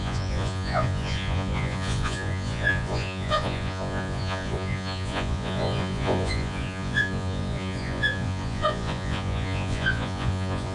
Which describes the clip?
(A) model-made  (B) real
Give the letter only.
A